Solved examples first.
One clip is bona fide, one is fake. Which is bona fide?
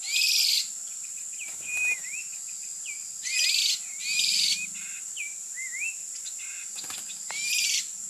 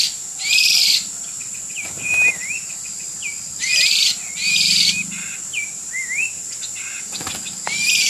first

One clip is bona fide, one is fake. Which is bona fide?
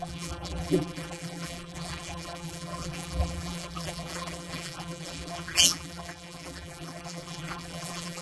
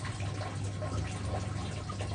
second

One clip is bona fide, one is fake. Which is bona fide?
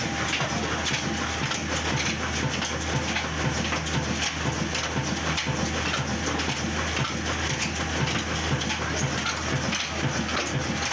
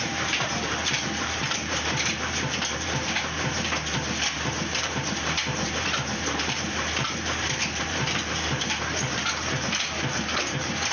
first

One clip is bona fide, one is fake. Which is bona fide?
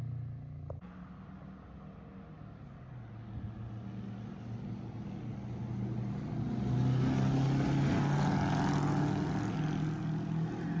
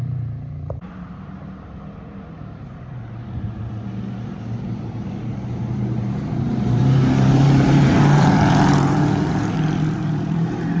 first